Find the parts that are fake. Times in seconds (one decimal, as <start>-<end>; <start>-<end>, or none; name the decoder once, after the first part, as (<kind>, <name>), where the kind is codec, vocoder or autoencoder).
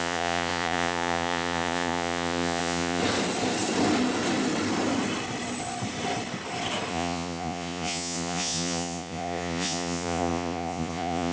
0.0-3.0 (vocoder, Vocos); 6.9-11.3